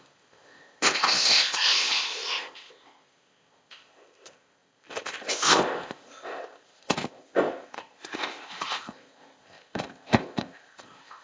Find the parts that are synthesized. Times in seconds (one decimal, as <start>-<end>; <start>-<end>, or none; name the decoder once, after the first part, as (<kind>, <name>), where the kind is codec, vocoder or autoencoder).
0.0-11.2 (codec, ZipCodec)